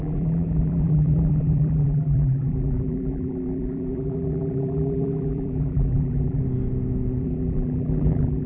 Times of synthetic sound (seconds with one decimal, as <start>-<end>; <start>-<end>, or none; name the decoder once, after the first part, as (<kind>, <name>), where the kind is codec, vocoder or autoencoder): 0.0-6.4 (vocoder, BigVGAN v2); 7.2-8.5

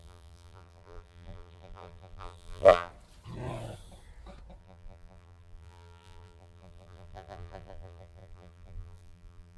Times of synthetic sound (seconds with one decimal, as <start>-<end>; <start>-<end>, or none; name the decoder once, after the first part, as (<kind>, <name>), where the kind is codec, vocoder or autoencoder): 0.0-2.9 (vocoder, BigVGAN v2); 4.6-9.6

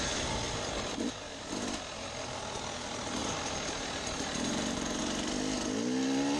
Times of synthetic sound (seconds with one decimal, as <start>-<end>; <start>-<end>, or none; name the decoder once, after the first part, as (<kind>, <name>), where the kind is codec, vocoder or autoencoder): 3.2-5.0 (vocoder, BigVGAN v2)

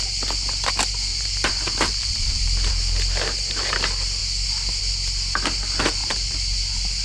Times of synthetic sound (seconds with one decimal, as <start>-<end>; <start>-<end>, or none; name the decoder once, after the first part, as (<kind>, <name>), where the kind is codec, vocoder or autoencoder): 1.1-2.7 (vocoder, BigVGAN v2); 6.0-7.0